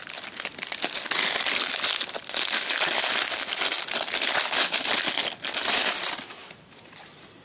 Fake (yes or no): no